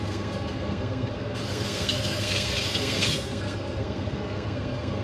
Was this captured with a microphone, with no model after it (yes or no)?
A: no